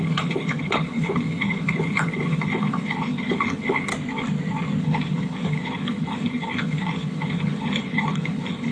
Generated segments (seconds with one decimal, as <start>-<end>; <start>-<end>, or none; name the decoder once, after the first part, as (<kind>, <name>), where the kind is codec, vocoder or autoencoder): 0.0-3.9 (codec, HILCodec); 4.8-8.7